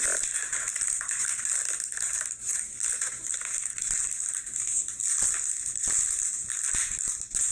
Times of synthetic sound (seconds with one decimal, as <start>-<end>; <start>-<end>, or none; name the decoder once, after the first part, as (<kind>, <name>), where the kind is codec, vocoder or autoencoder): none